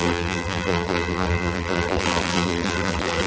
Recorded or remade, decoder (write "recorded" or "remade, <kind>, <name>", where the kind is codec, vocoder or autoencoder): remade, vocoder, BigVGAN v2